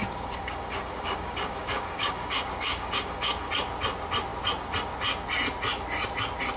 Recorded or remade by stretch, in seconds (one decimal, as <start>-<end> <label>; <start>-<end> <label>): 0.0-3.5 remade; 3.5-6.6 recorded